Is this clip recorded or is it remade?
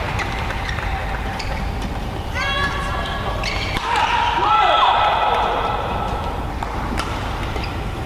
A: remade